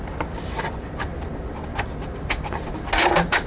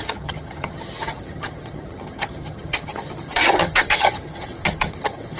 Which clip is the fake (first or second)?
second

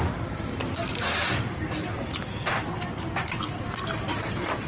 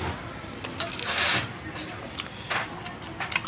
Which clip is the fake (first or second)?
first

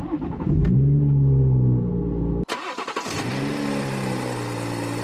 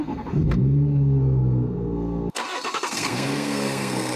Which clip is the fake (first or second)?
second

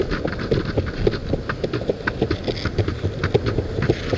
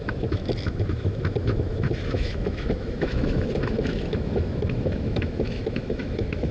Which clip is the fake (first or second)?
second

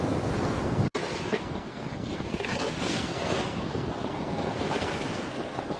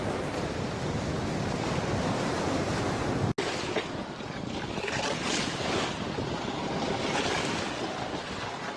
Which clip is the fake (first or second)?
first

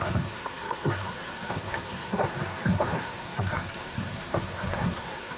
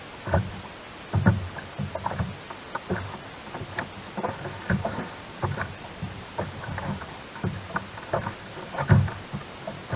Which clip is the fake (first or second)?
first